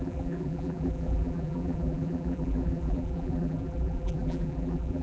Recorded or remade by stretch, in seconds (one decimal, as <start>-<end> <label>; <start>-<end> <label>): 0.0-5.0 remade